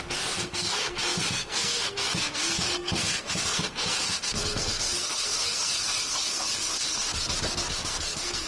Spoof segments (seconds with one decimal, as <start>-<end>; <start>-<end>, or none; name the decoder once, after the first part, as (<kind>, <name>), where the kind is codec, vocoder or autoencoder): 0.0-7.1 (codec, SNAC); 7.7-8.5